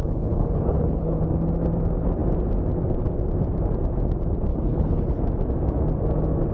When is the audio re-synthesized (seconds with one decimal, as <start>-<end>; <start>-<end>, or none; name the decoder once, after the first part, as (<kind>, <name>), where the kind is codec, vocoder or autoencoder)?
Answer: 0.0-1.2 (codec, HILCodec); 4.5-5.2